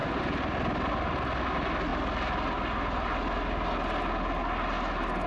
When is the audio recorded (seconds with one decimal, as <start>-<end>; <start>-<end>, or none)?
0.0-5.3